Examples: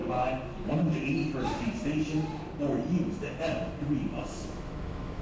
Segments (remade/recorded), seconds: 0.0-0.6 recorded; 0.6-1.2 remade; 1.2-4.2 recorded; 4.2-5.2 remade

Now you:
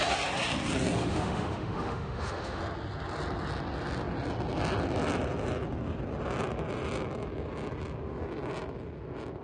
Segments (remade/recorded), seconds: 0.0-1.0 recorded; 1.0-2.6 remade; 2.6-9.4 recorded

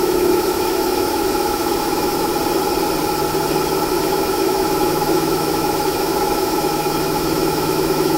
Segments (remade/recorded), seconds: 0.0-2.3 remade; 2.3-3.9 recorded; 3.9-8.2 remade

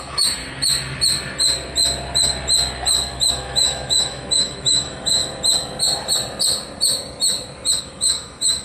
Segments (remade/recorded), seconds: 0.0-0.4 remade; 0.4-3.3 recorded; 3.3-5.2 remade; 5.2-7.8 recorded; 7.8-8.6 remade

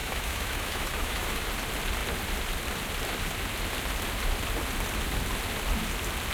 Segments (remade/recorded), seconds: 0.0-1.5 remade; 1.5-6.3 recorded

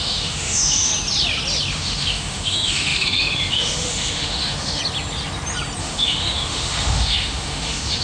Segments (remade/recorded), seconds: 0.0-0.9 remade; 0.9-1.7 recorded; 1.7-4.8 remade; 4.8-5.8 recorded; 5.8-8.0 remade

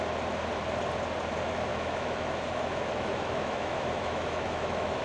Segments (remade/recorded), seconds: 0.0-1.7 recorded; 1.7-5.0 remade

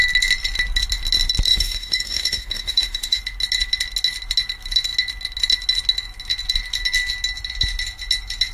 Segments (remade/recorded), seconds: 0.0-1.5 recorded; 1.5-3.2 remade; 3.2-8.5 recorded